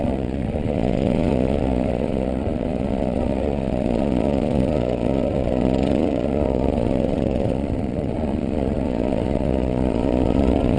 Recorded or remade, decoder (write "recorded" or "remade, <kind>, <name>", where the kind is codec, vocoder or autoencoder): remade, vocoder, Vocos